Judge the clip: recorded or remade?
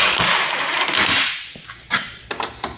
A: recorded